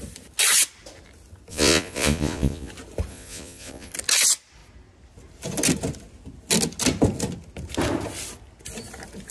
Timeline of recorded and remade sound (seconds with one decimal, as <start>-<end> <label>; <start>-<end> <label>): 0.0-1.5 recorded; 1.5-2.7 remade; 2.7-3.1 recorded; 3.1-3.9 remade; 3.9-9.3 recorded